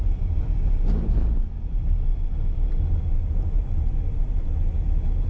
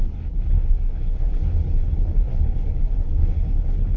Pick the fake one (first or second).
second